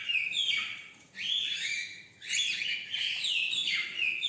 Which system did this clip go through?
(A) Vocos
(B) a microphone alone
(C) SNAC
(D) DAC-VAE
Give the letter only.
A